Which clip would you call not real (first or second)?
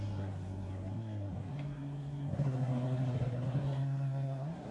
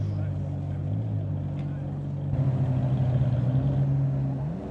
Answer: first